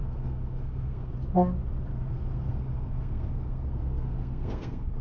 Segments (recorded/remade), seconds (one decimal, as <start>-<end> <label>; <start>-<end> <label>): 0.0-1.1 remade; 1.1-1.9 recorded; 1.9-5.0 remade